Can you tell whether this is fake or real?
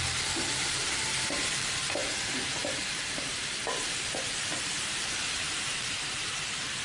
fake